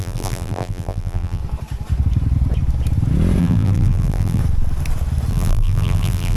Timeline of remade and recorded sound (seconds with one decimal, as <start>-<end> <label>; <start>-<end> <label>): 0.0-1.4 remade; 1.4-3.4 recorded; 3.4-4.4 remade; 4.4-5.3 recorded; 5.3-6.4 remade